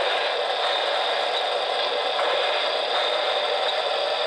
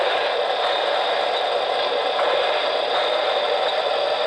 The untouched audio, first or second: first